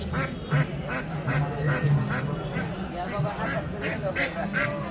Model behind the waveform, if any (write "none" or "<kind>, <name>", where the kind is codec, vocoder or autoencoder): none